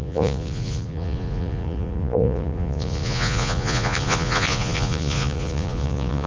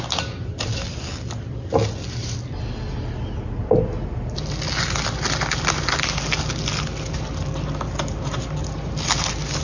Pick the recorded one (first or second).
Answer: second